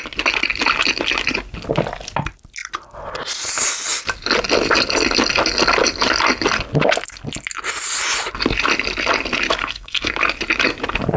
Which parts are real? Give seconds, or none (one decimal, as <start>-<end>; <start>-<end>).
0.0-9.6; 10.1-11.2

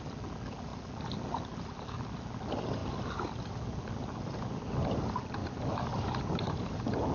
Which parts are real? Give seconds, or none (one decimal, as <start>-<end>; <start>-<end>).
0.0-5.4; 6.2-7.1